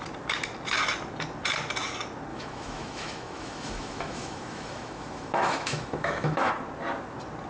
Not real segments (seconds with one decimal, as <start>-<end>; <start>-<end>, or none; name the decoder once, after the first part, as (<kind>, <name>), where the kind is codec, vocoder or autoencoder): 2.3-6.5 (autoencoder, DAC-VAE)